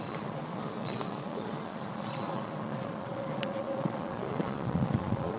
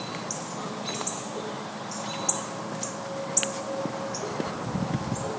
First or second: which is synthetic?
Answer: first